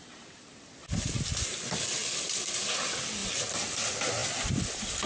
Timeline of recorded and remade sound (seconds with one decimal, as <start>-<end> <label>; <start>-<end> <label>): 0.0-5.1 recorded